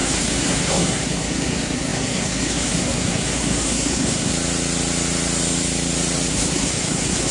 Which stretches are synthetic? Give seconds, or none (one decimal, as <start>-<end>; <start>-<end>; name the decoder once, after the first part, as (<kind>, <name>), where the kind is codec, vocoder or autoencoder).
0.0-4.3 (codec, SNAC); 6.3-7.3